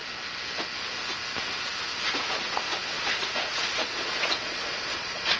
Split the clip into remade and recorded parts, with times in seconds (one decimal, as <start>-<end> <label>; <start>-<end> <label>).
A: 0.0-2.3 recorded; 2.3-5.4 remade